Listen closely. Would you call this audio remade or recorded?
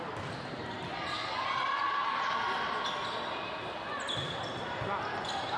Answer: recorded